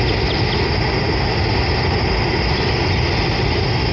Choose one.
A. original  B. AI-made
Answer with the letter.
A